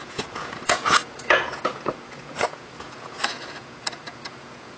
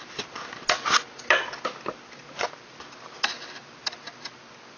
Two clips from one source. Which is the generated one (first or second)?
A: first